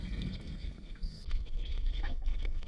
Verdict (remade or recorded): remade